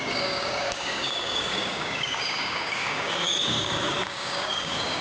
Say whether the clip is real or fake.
fake